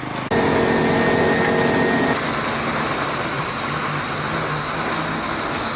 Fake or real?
real